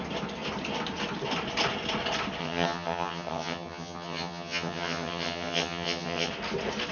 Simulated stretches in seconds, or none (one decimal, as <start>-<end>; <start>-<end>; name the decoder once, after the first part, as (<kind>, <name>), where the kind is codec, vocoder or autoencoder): 2.4-6.3 (vocoder, HiFi-GAN)